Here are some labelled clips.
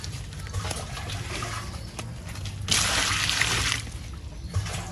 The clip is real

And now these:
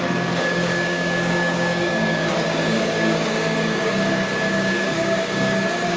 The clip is fake